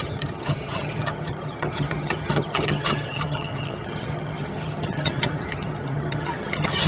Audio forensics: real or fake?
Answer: fake